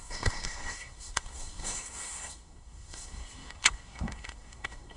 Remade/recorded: remade